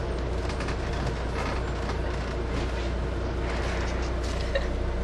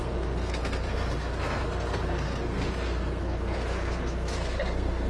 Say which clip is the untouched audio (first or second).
first